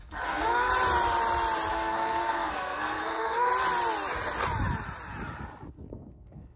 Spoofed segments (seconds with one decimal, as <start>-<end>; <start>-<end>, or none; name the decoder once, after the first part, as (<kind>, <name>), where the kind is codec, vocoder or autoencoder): 0.0-0.7 (codec, SNAC); 1.7-3.5; 5.7-6.6